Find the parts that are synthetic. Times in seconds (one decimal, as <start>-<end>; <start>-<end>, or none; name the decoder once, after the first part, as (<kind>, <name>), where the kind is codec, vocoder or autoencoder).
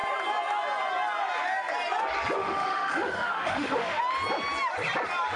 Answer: 2.4-4.0 (autoencoder, DAC-VAE)